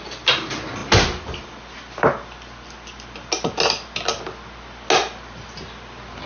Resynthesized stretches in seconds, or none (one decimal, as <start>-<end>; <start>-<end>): none